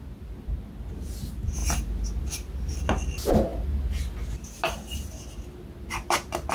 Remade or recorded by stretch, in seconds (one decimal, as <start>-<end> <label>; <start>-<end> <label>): 0.0-6.5 recorded